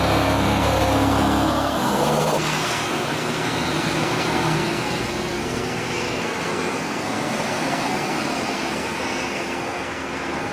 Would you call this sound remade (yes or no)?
yes